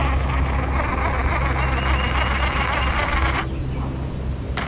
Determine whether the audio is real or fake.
real